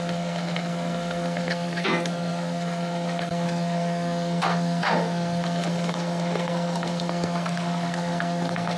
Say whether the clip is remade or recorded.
remade